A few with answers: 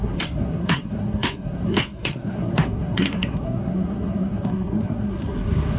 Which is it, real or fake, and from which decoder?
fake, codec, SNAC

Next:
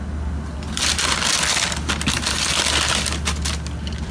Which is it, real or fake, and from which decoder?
real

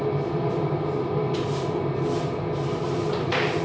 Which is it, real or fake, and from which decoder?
real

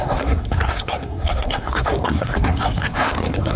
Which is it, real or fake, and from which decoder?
fake, codec, SNAC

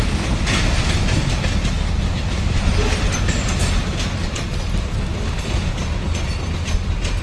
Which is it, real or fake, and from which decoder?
real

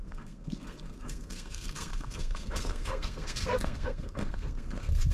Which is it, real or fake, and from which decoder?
fake, codec, SNAC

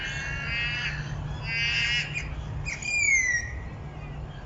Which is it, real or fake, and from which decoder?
real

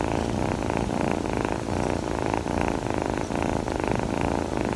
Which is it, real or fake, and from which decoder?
real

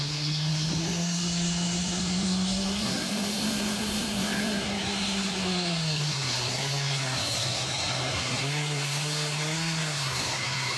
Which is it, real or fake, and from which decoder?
fake, codec, SNAC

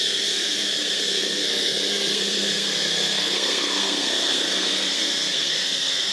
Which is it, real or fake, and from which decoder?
fake, codec, SNAC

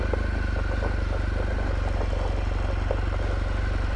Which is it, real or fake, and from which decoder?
real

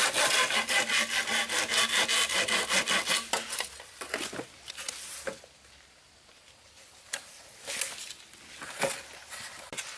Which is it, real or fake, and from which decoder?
real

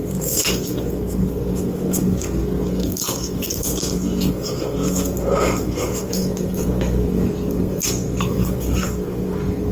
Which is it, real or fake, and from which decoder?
fake, codec, SNAC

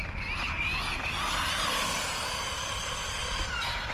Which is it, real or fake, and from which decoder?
real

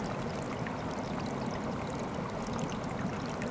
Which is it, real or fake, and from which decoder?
real